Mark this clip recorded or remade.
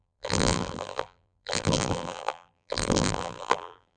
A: remade